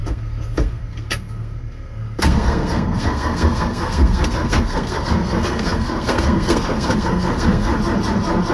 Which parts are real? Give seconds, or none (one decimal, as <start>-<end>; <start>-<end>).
7.7-8.5

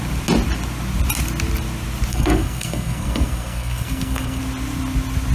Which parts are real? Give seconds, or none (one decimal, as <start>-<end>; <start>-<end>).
0.0-2.1; 4.4-5.3

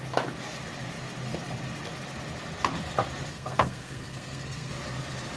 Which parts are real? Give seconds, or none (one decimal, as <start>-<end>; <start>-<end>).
0.0-3.3; 4.7-5.4

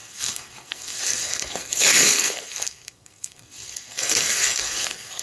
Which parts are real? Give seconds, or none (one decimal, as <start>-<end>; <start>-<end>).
none